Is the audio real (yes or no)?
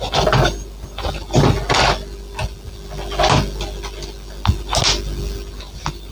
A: yes